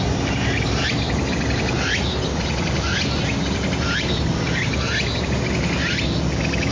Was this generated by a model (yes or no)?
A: no